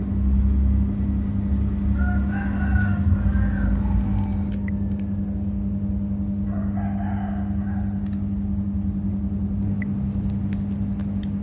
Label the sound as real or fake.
real